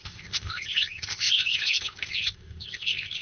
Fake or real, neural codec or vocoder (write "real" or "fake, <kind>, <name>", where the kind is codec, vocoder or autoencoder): fake, codec, ZipCodec